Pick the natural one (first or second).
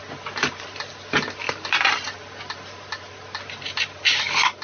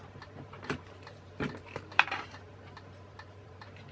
first